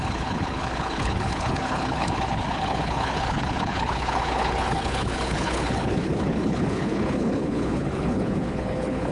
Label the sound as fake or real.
fake